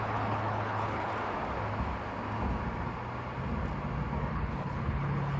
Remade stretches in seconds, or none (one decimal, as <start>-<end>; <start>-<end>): 0.0-1.1; 4.3-5.4